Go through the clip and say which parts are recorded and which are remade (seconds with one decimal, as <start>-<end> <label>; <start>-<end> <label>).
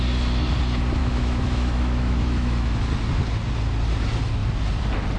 0.0-1.0 recorded; 1.0-2.9 remade; 2.9-5.2 recorded